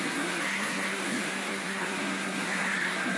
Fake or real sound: fake